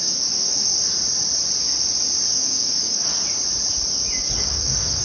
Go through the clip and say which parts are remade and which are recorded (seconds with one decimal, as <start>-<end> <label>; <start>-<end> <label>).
0.0-0.7 remade; 0.7-2.3 recorded; 2.3-3.1 remade; 3.1-4.4 recorded; 4.4-5.0 remade